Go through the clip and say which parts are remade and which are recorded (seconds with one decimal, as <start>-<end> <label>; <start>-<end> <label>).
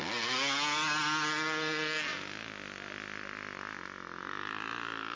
0.0-5.2 recorded